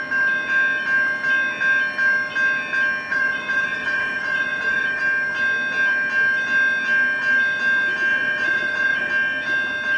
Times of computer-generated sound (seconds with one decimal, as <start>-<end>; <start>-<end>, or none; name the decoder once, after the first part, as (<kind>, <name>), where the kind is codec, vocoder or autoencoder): 3.1-5.0 (vocoder, Vocos); 8.1-9.1